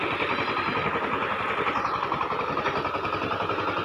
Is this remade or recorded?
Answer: recorded